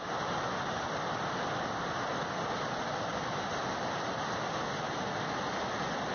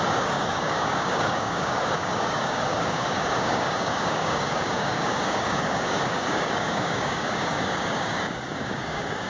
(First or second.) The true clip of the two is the first